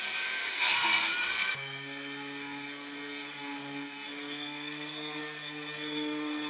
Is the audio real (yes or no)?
no